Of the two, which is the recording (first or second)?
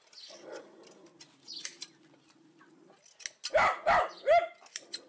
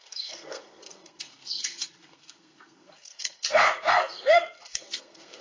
first